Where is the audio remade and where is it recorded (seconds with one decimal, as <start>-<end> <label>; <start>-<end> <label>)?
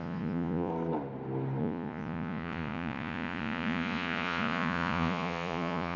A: 0.0-0.7 remade; 0.7-1.6 recorded; 1.6-6.0 remade